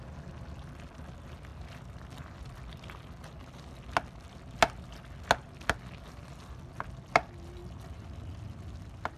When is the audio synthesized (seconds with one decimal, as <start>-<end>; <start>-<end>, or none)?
none